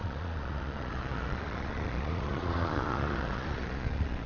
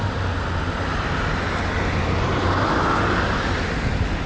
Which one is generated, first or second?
first